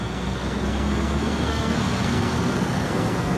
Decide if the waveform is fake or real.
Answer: fake